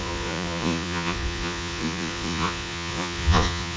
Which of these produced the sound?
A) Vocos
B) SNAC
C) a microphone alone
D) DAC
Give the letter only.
A